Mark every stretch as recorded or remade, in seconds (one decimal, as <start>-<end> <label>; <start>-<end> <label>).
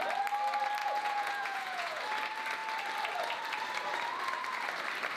0.0-0.8 recorded; 0.8-2.0 remade; 2.0-5.2 recorded